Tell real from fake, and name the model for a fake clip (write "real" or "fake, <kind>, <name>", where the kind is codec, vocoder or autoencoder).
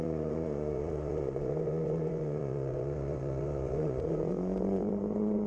fake, vocoder, Vocos